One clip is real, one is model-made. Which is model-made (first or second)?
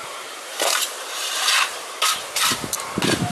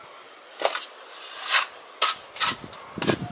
first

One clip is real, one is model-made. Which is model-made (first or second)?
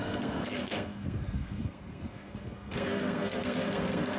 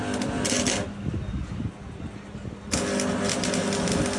first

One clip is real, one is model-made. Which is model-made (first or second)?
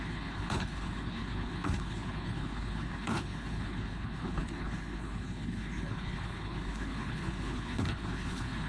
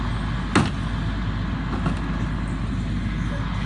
first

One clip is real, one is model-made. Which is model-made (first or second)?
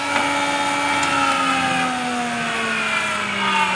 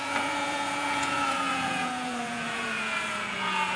second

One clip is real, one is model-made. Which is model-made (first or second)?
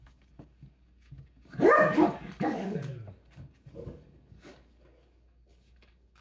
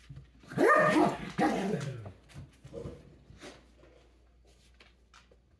first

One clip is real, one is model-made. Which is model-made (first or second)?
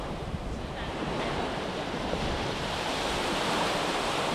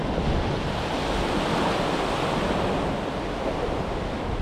first